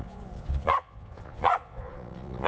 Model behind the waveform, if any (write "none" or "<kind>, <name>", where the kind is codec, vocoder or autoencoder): vocoder, Vocos